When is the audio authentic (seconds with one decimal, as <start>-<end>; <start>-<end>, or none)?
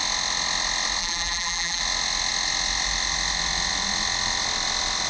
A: 0.0-1.0; 1.8-5.1